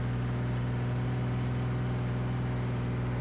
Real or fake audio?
real